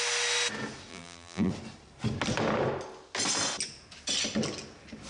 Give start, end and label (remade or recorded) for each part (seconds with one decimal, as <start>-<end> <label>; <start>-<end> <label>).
0.0-0.9 recorded; 0.9-1.5 remade; 1.5-5.1 recorded